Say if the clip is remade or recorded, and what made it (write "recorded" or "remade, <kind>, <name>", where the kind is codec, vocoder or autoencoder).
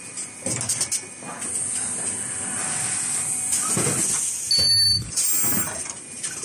recorded